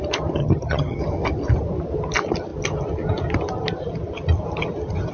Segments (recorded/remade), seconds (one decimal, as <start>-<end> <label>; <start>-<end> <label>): 0.0-0.4 recorded; 0.4-1.0 remade; 1.0-5.1 recorded